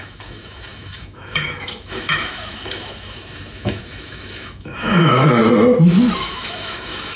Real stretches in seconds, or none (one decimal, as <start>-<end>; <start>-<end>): 5.4-6.2